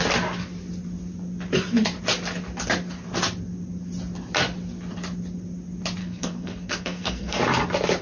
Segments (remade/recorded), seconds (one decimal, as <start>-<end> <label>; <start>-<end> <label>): 0.0-6.0 recorded; 6.0-7.4 remade; 7.4-8.0 recorded